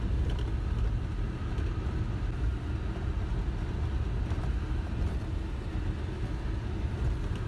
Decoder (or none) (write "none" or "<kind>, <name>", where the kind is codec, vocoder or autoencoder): none